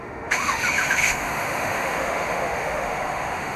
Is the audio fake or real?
fake